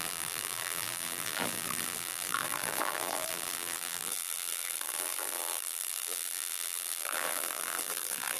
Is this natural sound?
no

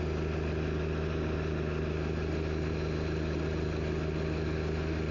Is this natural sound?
yes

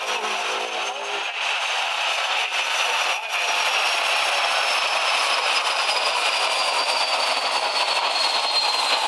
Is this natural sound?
no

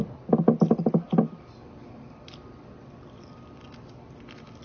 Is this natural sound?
yes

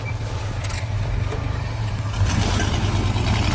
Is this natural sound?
no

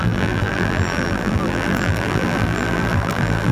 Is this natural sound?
no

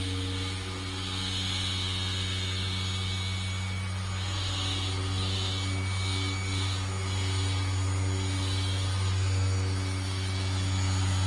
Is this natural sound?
yes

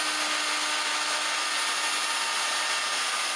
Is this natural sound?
yes